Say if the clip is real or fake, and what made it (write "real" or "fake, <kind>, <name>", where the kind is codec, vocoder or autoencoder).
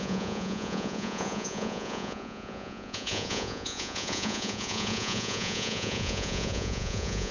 fake, vocoder, Vocos